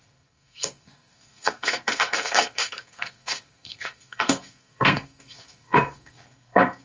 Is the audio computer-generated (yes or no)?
yes